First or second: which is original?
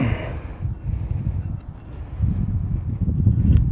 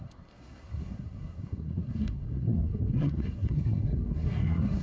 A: first